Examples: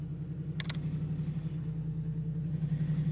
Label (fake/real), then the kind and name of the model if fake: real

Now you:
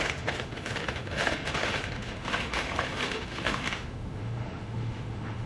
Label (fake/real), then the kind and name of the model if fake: fake, autoencoder, DAC-VAE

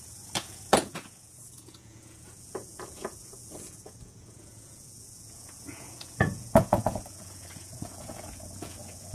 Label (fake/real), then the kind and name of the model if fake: fake, vocoder, Vocos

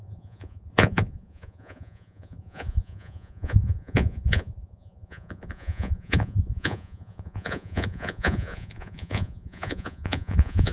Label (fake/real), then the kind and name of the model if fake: fake, vocoder, Vocos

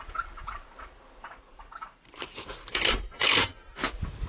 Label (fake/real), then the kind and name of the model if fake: fake, vocoder, BigVGAN v2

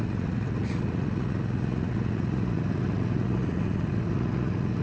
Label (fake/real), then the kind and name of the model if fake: fake, vocoder, Vocos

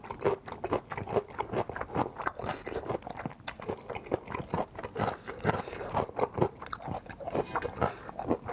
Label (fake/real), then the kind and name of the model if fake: real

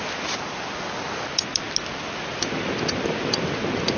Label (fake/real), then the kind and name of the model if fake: real